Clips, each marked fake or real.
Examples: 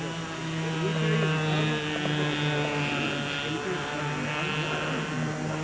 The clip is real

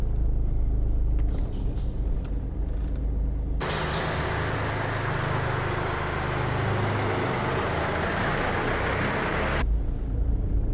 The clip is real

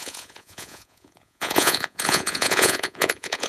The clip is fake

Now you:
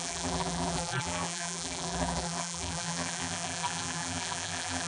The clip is fake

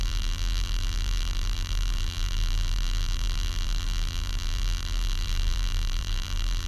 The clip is fake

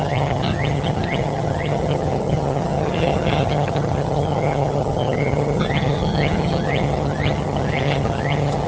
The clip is fake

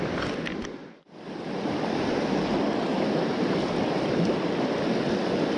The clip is real